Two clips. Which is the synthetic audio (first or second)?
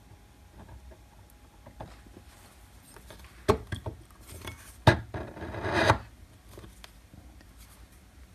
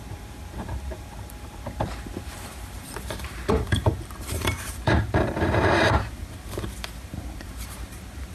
second